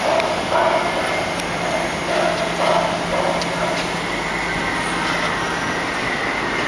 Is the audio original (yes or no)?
yes